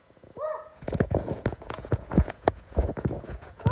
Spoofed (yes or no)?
yes